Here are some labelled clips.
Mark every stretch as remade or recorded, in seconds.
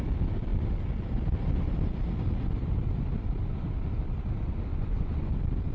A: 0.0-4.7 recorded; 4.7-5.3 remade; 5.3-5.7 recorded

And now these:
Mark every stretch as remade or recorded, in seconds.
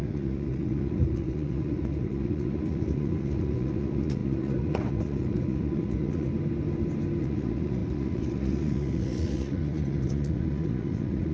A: 0.0-6.3 remade; 6.3-7.2 recorded; 7.2-11.3 remade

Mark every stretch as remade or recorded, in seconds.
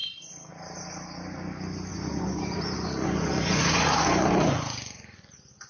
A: 0.0-1.9 recorded; 1.9-5.3 remade; 5.3-5.7 recorded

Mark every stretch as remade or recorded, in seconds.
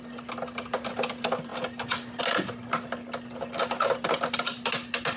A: 0.0-5.2 recorded